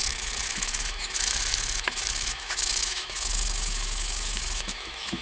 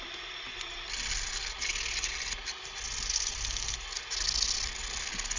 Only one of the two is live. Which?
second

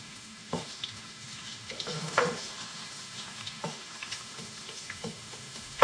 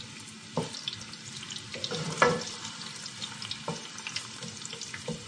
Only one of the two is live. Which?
second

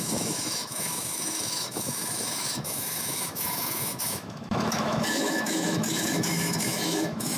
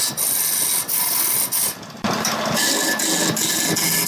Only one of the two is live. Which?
second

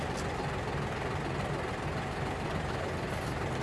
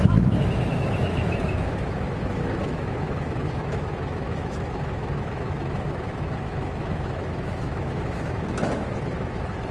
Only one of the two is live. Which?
first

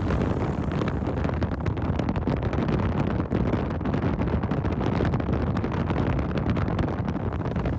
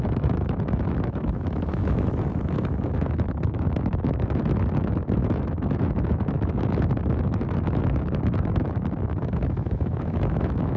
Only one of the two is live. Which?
first